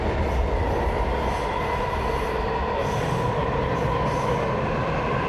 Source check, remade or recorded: recorded